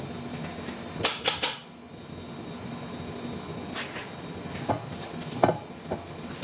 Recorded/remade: recorded